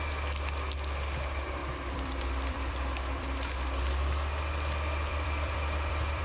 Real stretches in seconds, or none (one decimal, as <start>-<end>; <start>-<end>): 0.0-1.6; 3.8-5.1